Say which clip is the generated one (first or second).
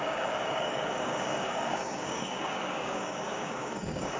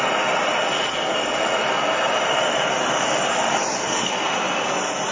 first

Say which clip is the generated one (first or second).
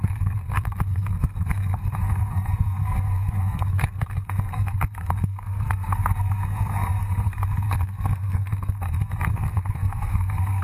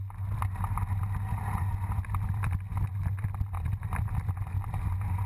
first